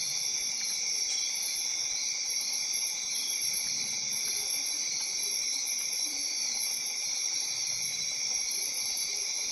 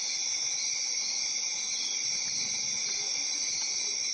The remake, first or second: first